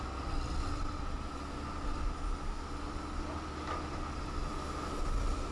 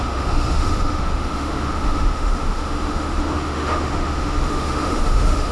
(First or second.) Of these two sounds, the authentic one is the first